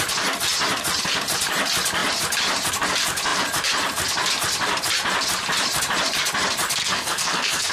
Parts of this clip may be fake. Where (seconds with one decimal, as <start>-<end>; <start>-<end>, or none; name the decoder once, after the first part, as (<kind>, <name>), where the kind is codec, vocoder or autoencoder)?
6.8-7.7 (codec, SNAC)